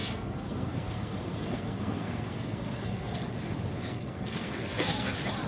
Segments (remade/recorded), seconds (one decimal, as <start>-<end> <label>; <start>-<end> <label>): 0.0-3.3 remade; 3.3-3.8 recorded; 3.8-5.1 remade; 5.1-5.5 recorded